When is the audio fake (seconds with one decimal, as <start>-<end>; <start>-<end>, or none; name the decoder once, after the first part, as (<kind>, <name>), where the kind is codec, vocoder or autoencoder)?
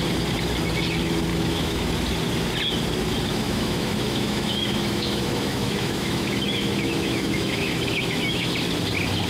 1.3-1.9 (autoencoder, DAC-VAE); 3.3-8.5